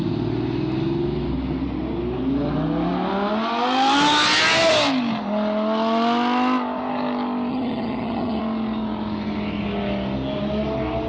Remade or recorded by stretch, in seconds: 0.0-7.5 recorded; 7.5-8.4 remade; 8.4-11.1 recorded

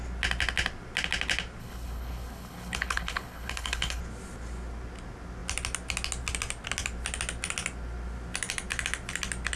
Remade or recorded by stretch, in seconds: 0.0-1.6 recorded; 1.6-4.0 remade; 4.0-9.6 recorded

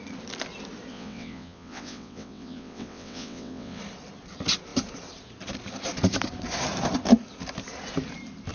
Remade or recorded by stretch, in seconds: 0.0-0.9 recorded; 0.9-3.8 remade; 3.8-8.5 recorded